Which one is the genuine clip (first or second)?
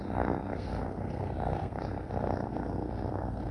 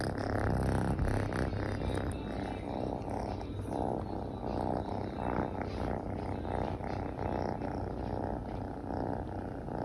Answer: second